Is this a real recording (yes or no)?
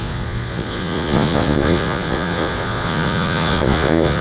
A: no